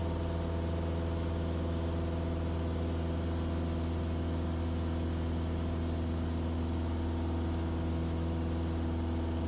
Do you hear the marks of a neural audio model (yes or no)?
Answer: no